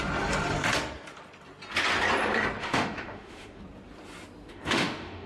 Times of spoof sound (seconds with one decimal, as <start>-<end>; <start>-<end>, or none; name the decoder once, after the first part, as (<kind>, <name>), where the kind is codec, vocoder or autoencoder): 2.6-3.6 (autoencoder, DAC-VAE); 4.5-5.3